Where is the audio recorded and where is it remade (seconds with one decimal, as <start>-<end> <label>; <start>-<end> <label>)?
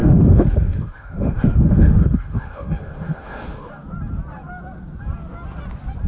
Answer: 0.0-3.7 remade; 3.7-6.1 recorded